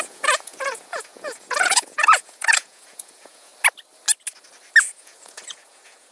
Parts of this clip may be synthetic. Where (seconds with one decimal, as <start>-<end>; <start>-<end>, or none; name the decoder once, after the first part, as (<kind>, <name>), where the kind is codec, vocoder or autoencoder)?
0.0-3.5 (vocoder, Vocos); 4.8-6.1